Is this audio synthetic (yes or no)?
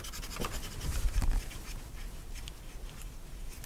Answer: no